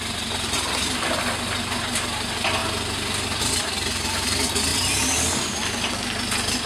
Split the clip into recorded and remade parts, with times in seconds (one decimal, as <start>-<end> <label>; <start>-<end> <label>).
0.0-4.7 recorded; 4.7-5.9 remade; 5.9-6.7 recorded